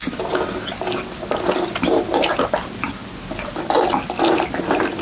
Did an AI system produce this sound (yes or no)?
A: no